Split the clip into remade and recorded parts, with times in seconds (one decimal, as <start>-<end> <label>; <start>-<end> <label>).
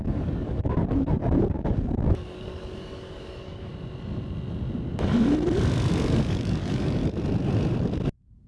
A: 0.0-3.7 remade; 3.7-5.9 recorded; 5.9-7.0 remade; 7.0-8.5 recorded